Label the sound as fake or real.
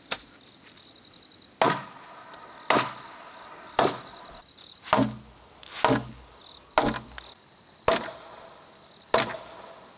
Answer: real